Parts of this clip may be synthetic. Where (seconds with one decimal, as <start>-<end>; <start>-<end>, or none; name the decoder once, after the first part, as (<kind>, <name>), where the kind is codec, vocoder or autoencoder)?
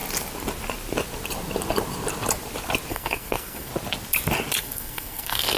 2.9-3.7 (codec, SNAC); 4.6-5.6